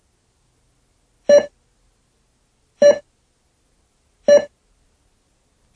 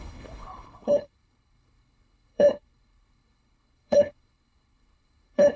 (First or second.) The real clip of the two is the first